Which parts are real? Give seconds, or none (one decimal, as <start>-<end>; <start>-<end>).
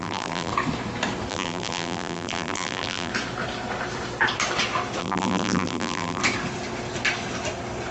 0.5-1.3; 3.1-5.0; 6.2-7.9